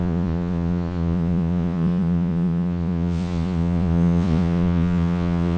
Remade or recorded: remade